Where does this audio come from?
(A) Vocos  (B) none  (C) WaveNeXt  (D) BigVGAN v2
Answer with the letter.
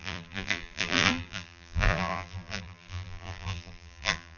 D